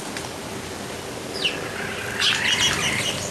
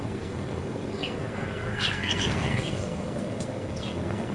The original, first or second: first